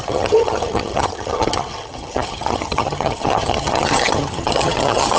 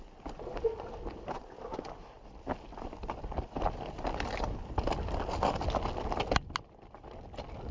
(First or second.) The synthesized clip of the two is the first